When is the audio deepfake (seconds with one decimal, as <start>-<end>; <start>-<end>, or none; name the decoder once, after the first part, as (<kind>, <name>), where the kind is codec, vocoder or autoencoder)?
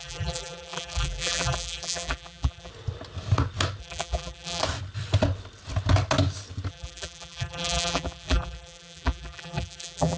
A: 0.0-2.7 (vocoder, BigVGAN v2); 3.8-4.6; 6.7-10.2